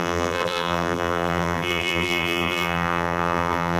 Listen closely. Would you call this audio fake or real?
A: fake